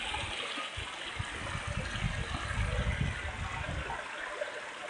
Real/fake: real